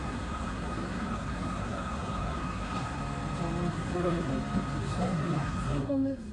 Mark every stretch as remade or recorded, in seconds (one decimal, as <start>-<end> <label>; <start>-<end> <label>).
0.0-3.0 remade; 3.0-3.7 recorded; 3.7-4.3 remade; 4.3-4.8 recorded; 4.8-6.3 remade